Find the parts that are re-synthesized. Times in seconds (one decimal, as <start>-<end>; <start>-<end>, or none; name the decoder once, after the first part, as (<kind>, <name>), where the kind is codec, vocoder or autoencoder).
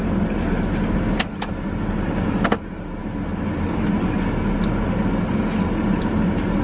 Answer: none